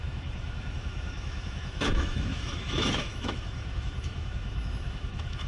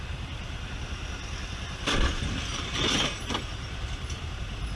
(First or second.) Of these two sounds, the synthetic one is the first